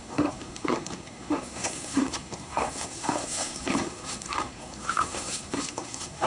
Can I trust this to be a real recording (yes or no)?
no